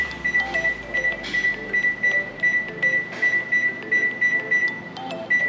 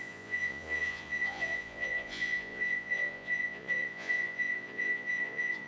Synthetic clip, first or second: second